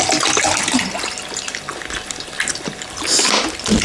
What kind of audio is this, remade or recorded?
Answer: recorded